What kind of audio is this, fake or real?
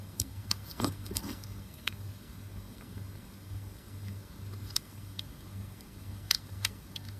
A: fake